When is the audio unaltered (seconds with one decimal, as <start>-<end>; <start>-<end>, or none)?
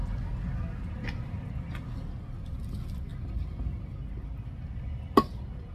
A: 0.0-5.7